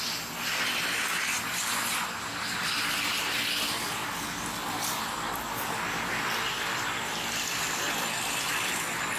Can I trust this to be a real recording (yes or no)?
yes